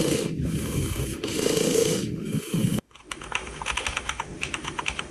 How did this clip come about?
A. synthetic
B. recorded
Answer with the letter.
A